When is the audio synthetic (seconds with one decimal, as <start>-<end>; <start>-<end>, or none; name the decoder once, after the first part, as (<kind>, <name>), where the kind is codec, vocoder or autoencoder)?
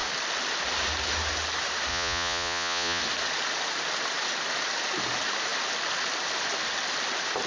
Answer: 1.9-3.0 (vocoder, Vocos)